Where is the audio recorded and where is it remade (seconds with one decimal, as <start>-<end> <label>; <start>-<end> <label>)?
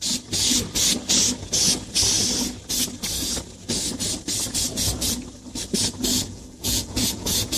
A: 0.0-6.1 recorded; 6.1-7.6 remade